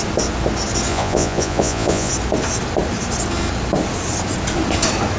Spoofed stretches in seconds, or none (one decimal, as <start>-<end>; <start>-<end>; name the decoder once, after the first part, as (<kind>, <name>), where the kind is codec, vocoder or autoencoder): 0.9-2.1 (vocoder, Vocos)